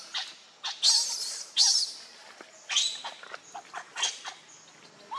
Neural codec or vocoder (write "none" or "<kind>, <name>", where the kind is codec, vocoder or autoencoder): none